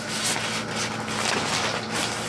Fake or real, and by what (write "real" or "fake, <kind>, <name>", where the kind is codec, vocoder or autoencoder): real